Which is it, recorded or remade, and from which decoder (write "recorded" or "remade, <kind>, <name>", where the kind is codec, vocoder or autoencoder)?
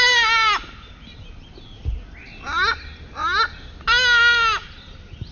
recorded